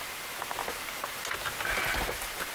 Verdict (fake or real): real